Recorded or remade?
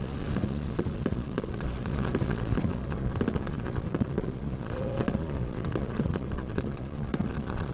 remade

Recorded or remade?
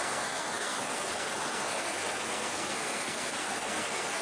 remade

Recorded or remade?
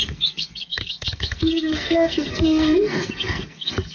remade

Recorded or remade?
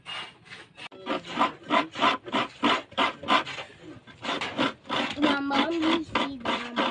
recorded